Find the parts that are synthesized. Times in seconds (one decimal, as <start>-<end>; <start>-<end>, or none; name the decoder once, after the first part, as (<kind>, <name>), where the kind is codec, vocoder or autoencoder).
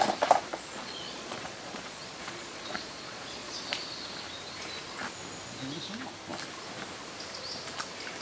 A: 0.5-3.6 (vocoder, Vocos)